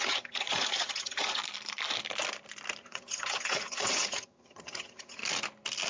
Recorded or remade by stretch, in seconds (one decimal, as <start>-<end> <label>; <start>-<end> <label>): 0.0-1.4 remade; 1.4-2.8 recorded; 2.8-5.2 remade; 5.2-5.9 recorded